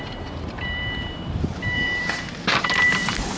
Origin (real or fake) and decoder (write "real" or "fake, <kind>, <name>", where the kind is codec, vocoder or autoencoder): fake, vocoder, BigVGAN v2